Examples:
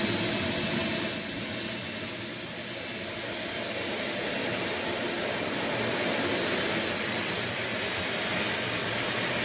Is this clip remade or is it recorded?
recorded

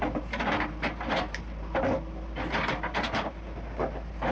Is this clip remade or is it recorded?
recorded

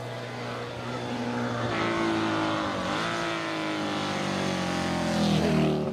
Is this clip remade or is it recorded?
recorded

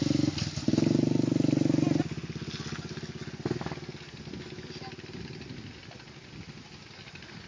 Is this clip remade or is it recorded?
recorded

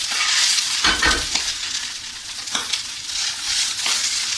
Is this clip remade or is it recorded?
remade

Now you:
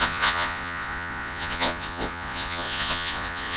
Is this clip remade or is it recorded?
remade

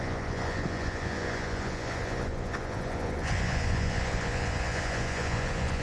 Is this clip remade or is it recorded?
remade